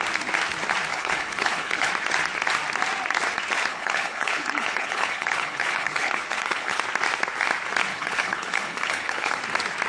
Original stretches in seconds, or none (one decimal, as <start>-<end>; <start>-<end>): 0.0-0.9; 1.9-3.7; 6.8-7.9; 9.4-9.9